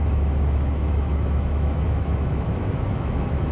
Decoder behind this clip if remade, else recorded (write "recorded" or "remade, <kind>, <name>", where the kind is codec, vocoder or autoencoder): remade, autoencoder, DAC-VAE